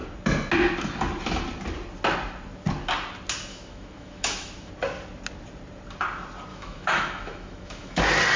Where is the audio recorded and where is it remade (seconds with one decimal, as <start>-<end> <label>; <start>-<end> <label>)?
0.0-3.5 recorded; 3.5-4.7 remade; 4.7-6.5 recorded; 6.5-8.0 remade; 8.0-8.4 recorded